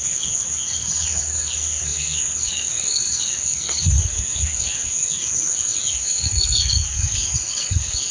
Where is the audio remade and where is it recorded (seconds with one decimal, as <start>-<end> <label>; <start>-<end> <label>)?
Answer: 0.0-8.1 remade